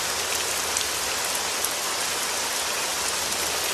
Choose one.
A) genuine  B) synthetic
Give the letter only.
A